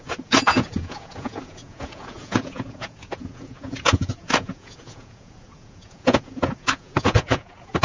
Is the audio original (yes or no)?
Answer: no